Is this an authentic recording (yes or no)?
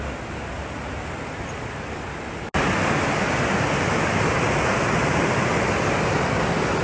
yes